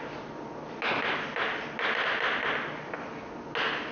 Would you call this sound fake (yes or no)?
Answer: no